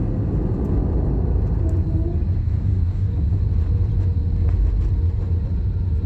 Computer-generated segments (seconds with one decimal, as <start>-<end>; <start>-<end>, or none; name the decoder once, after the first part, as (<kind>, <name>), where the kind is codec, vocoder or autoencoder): 2.4-3.1 (codec, DAC)